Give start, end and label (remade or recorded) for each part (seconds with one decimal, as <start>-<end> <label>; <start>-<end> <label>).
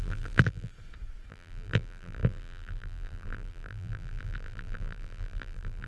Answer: 0.0-0.7 remade; 0.7-1.3 recorded; 1.3-5.9 remade